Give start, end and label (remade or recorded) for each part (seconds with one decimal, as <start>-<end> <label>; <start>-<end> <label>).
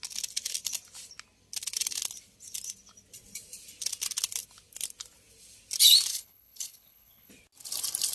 0.0-6.1 recorded; 6.1-7.3 remade; 7.3-8.1 recorded